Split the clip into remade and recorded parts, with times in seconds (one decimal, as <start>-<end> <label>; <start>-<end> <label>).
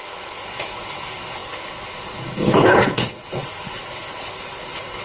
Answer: 0.0-5.0 remade